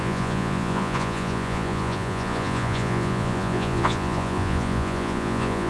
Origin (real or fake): fake